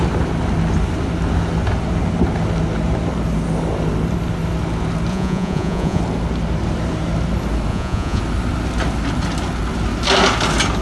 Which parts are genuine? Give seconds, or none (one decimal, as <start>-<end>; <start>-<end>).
0.0-5.1; 6.0-7.7; 8.2-10.8